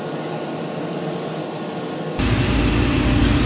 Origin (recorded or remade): recorded